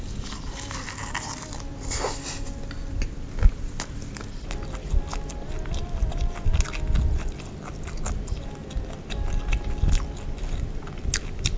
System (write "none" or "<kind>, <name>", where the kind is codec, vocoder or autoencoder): none